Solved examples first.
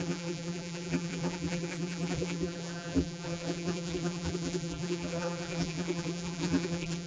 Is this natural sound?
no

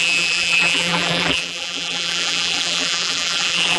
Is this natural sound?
no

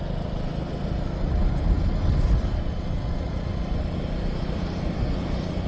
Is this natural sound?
yes